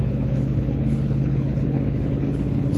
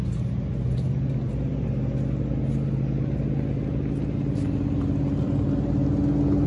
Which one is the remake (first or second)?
first